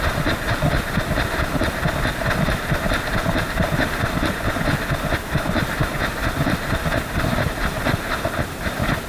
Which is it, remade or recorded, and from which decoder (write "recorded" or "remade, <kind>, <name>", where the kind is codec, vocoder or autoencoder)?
recorded